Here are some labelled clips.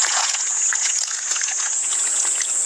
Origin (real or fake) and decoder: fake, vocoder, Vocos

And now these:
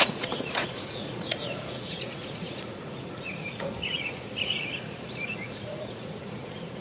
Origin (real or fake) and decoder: fake, vocoder, Vocos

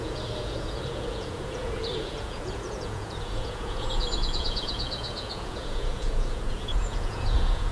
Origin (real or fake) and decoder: fake, vocoder, Vocos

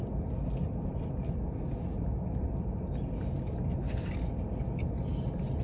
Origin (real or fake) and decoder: real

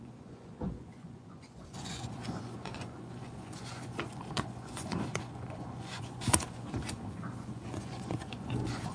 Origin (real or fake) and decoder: fake, vocoder, Vocos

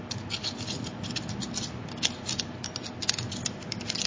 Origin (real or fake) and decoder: real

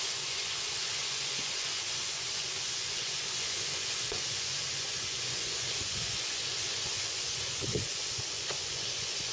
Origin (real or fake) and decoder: fake, vocoder, Vocos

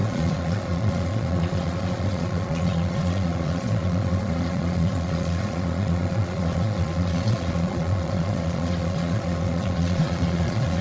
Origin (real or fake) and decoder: fake, vocoder, Vocos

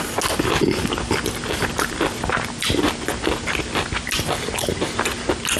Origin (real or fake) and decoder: real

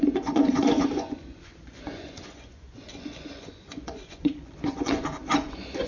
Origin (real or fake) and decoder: fake, vocoder, Vocos